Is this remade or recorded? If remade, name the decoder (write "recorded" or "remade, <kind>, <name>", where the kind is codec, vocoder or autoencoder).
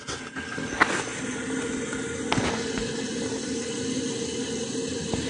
recorded